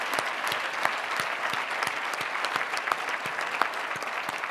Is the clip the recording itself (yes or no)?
yes